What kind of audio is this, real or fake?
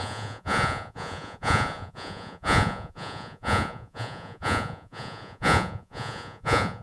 fake